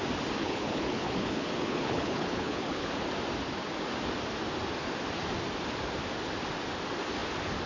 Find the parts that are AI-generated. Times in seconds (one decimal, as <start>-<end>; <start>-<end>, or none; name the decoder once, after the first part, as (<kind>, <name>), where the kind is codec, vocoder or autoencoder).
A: 0.4-2.9 (codec, HILCodec)